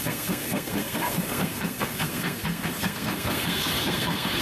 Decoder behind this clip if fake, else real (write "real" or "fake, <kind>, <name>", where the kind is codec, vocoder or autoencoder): fake, codec, SNAC